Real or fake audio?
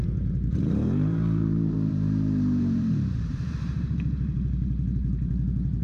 fake